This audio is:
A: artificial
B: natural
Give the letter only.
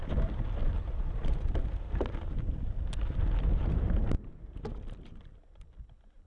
B